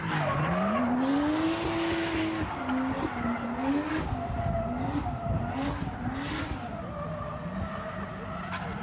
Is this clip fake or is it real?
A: real